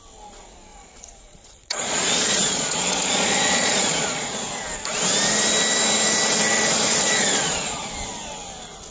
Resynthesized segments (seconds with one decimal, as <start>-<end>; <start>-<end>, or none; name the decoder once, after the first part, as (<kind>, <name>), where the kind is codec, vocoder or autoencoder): 0.7-4.5 (vocoder, Vocos); 6.9-7.9